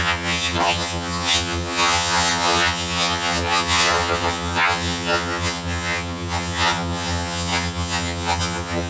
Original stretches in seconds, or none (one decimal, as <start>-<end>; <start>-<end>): none

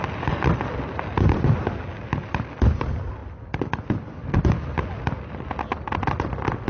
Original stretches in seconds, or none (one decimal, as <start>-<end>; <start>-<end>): 0.0-6.7

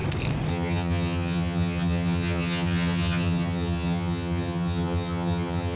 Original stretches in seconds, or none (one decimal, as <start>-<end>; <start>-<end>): 0.0-0.5

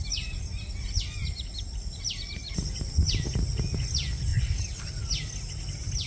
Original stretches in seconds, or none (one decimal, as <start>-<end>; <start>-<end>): 0.0-6.1

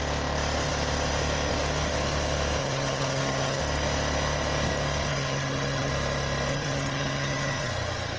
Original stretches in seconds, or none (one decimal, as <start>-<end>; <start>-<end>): 0.0-2.6; 3.6-5.1; 5.9-6.5; 7.7-8.2

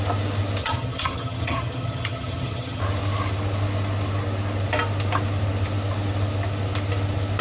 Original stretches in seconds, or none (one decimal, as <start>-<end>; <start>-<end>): 0.0-0.6; 2.8-7.4

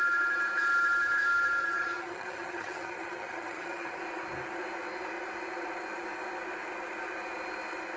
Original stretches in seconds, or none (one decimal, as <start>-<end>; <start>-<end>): 0.0-1.6; 4.0-8.0